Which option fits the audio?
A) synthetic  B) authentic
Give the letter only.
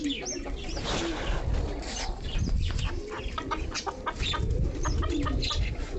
B